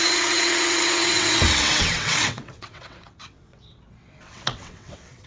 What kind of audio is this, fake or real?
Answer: fake